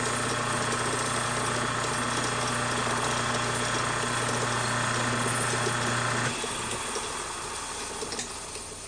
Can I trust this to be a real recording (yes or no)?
yes